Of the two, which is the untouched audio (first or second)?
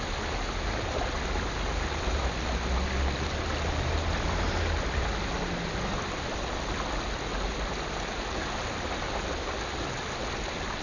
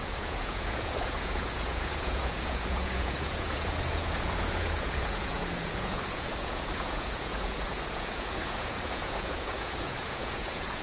first